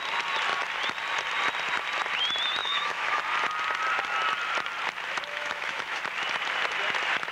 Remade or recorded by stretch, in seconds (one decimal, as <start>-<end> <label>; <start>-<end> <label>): 0.0-2.6 recorded; 2.6-3.2 remade; 3.2-5.3 recorded; 5.3-6.0 remade; 6.0-7.3 recorded